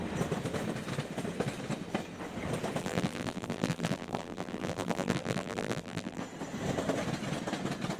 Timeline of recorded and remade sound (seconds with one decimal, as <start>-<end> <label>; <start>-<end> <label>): 0.0-2.8 recorded; 2.8-6.2 remade; 6.2-8.0 recorded